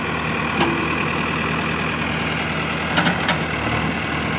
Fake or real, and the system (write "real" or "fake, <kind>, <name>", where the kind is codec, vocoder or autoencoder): real